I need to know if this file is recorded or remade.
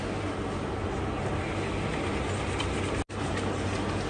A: recorded